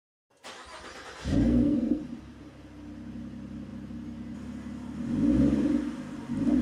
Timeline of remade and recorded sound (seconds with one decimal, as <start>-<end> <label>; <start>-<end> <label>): 0.0-1.4 recorded; 1.4-2.0 remade; 2.0-6.6 recorded